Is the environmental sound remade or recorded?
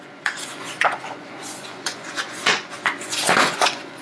remade